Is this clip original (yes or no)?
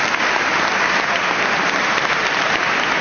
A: yes